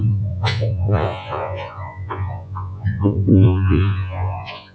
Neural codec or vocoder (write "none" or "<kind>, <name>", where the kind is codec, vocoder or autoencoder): vocoder, Vocos